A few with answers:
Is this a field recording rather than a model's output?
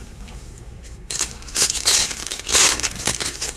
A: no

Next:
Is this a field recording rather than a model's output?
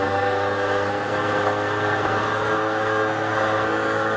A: no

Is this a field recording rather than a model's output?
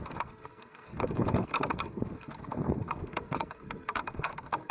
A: no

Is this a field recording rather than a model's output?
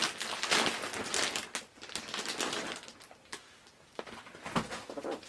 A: yes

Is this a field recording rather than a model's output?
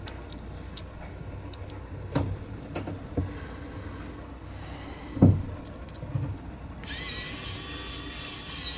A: yes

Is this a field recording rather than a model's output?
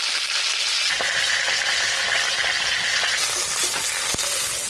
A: yes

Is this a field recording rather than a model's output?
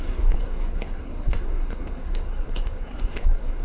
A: no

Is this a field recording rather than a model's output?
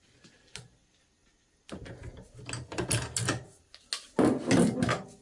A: yes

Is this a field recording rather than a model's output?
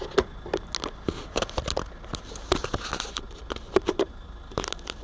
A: yes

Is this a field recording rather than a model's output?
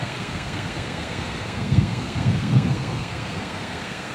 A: no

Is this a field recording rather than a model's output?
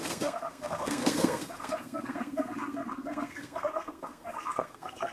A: no